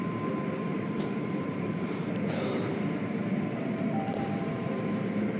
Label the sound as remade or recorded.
remade